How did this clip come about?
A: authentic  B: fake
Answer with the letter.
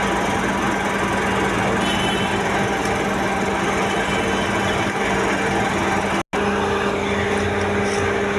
A